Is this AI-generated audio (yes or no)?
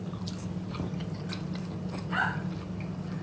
no